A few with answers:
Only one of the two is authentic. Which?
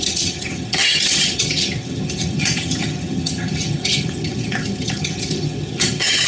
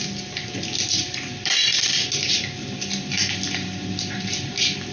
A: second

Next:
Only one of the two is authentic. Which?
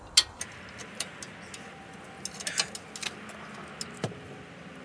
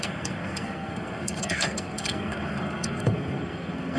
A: first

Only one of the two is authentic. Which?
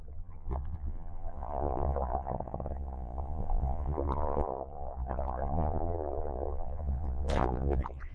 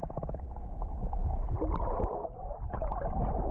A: second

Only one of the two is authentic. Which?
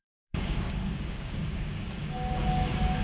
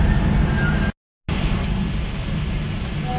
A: second